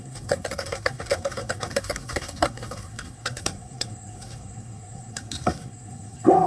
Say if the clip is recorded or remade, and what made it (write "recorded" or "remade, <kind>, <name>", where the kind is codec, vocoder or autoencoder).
remade, codec, SNAC